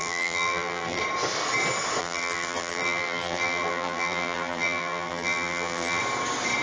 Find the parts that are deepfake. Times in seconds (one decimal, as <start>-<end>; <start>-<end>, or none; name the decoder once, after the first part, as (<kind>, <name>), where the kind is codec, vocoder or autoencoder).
0.0-1.0 (vocoder, BigVGAN v2); 2.0-6.0